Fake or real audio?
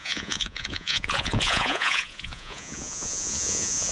fake